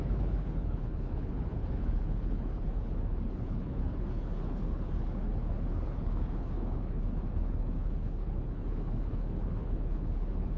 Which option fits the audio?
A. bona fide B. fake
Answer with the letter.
B